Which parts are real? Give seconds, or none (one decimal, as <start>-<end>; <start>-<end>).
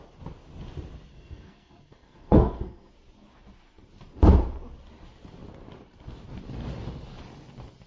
0.0-1.1; 2.9-7.9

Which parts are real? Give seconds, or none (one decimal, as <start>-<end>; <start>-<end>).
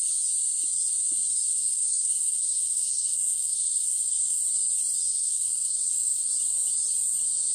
0.0-1.6; 4.4-5.1; 6.3-7.5